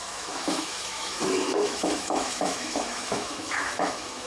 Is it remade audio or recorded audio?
remade